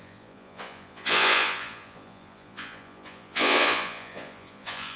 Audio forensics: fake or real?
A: fake